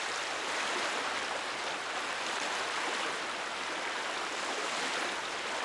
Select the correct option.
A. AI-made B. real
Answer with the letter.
B